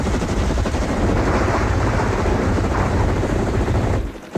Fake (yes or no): yes